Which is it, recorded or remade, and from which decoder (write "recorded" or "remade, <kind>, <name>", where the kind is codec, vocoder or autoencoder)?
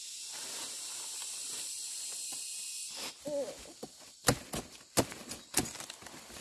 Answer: recorded